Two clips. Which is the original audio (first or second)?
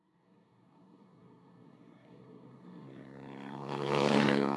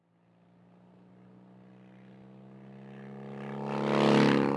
second